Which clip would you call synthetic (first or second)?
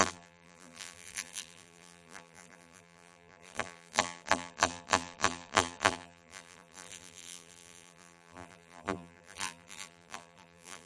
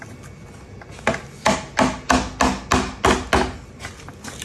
first